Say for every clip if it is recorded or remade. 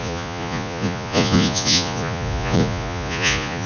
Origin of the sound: remade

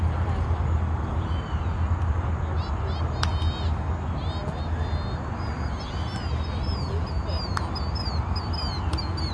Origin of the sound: recorded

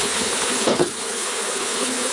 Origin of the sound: remade